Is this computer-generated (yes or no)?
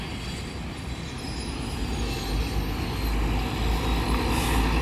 no